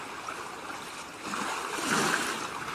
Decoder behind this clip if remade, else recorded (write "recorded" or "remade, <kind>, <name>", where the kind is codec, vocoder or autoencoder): recorded